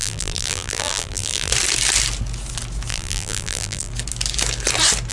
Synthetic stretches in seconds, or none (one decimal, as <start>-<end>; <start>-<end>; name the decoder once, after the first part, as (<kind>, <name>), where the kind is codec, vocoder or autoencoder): 0.0-1.5 (vocoder, BigVGAN v2); 2.9-3.9